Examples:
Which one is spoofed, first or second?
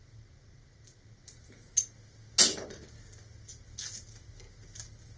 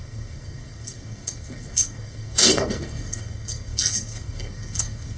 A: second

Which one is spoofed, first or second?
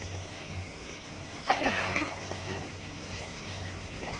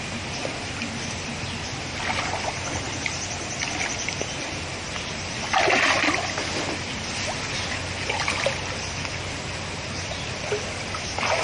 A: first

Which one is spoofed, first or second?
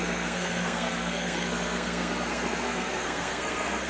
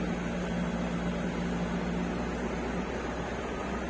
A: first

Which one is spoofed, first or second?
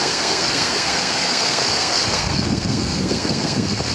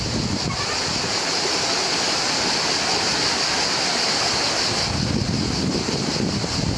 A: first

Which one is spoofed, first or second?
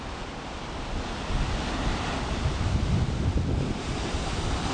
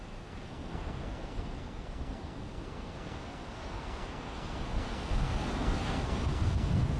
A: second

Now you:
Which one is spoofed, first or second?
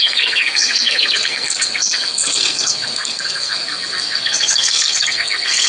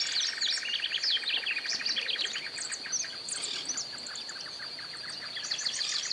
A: first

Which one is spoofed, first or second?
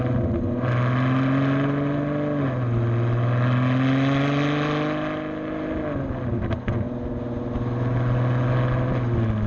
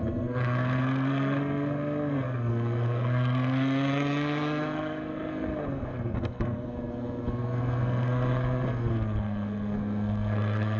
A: second